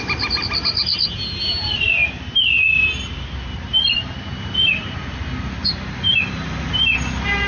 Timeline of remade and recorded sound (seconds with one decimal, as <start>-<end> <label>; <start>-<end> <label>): 0.0-5.0 remade; 5.0-6.7 recorded; 6.7-7.5 remade